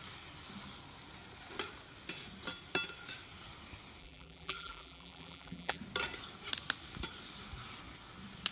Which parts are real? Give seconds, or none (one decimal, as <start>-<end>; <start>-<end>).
0.0-4.0; 5.8-8.5